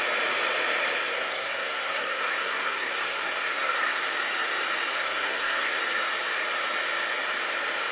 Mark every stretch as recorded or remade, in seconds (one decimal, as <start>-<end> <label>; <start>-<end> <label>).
0.0-1.1 recorded; 1.1-4.0 remade; 4.0-4.9 recorded; 4.9-5.8 remade; 5.8-7.9 recorded